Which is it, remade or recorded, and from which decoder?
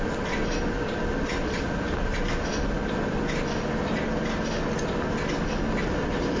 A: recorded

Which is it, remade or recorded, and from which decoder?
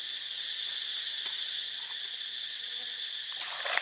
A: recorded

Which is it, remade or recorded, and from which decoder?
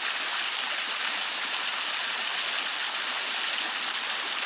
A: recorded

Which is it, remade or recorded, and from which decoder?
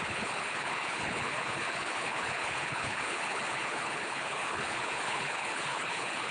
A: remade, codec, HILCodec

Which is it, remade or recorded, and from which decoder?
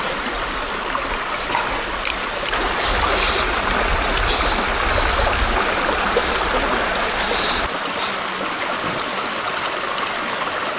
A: recorded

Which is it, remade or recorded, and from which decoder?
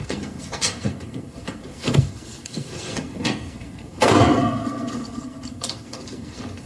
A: remade, codec, SNAC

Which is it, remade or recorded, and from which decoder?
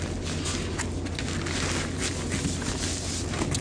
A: recorded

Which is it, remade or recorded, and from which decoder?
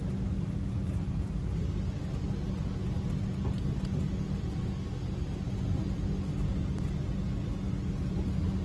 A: recorded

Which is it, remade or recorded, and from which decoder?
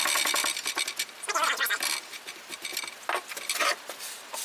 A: recorded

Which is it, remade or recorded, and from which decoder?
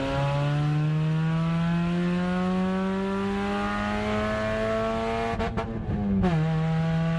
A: recorded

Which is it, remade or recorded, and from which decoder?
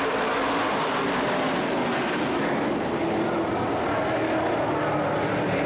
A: recorded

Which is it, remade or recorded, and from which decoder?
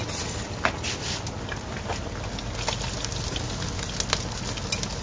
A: recorded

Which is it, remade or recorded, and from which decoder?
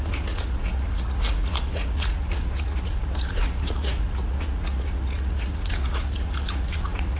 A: remade, vocoder, Vocos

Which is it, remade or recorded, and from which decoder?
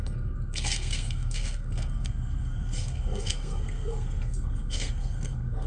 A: remade, codec, SNAC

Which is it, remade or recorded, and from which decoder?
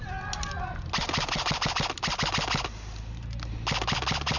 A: recorded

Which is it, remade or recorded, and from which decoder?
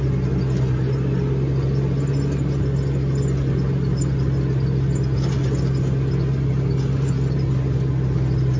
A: recorded